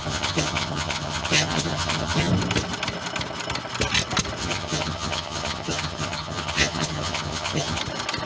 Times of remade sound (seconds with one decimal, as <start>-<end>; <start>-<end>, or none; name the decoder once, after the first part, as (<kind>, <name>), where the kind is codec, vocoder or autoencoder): 0.0-2.3 (vocoder, HiFi-GAN); 4.4-7.8